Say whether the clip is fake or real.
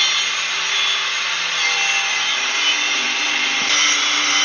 real